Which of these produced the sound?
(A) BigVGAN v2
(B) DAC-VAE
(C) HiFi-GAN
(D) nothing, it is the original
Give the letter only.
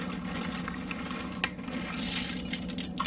D